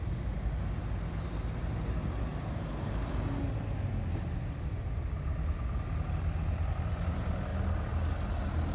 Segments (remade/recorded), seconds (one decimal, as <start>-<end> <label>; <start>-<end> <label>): 0.0-8.7 recorded